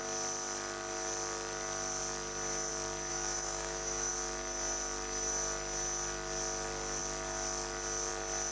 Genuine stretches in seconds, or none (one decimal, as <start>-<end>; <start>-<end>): 0.0-3.1; 4.1-8.5